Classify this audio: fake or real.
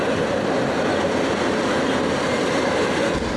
real